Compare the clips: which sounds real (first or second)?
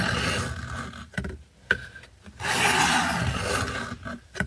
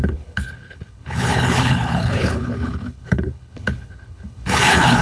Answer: first